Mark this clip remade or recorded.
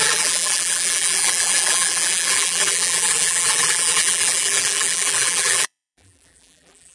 remade